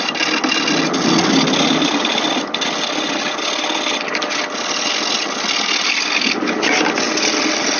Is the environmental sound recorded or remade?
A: recorded